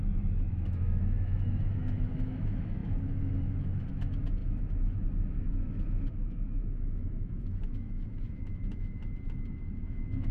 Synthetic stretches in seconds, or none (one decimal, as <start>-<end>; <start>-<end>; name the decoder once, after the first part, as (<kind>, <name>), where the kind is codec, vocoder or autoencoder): 0.0-10.3 (autoencoder, DAC-VAE)